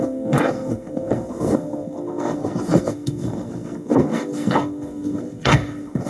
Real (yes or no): no